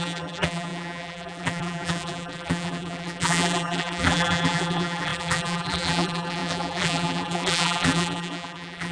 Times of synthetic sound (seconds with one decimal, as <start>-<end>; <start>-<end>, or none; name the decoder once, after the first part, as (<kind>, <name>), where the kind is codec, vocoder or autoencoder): 0.0-8.9 (vocoder, BigVGAN v2)